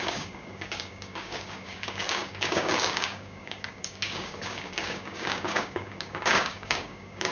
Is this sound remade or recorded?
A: remade